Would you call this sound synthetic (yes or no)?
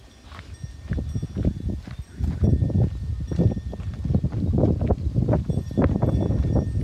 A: no